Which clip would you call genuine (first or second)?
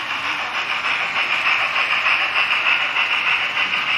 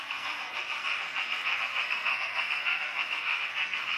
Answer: first